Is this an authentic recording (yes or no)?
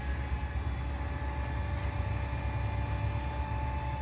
yes